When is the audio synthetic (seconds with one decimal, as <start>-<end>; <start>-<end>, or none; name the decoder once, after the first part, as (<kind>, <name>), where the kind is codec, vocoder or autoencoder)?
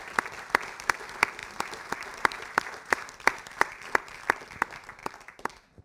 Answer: 1.4-4.5 (vocoder, BigVGAN v2)